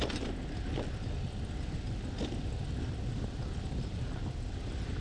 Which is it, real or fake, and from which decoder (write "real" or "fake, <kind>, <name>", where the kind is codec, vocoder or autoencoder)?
real